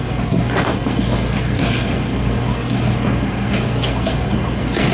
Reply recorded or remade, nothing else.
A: remade